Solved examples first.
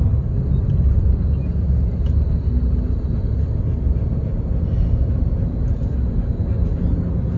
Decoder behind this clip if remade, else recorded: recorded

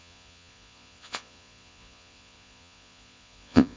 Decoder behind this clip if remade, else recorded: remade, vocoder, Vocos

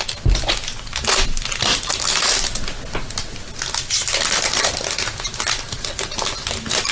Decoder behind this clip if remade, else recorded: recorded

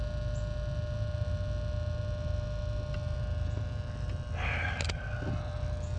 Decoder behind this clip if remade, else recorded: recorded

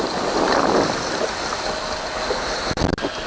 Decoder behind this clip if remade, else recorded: recorded